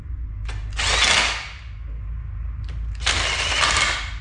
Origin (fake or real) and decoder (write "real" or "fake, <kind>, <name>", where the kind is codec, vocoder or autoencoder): real